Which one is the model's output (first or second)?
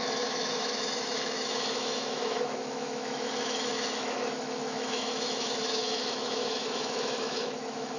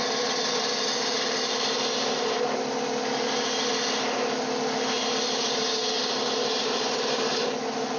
first